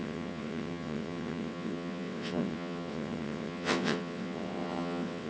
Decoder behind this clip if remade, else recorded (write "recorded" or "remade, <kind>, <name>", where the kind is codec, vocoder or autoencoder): remade, vocoder, WaveNeXt